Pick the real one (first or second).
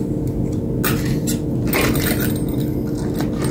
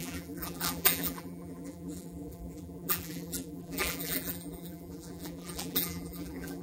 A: first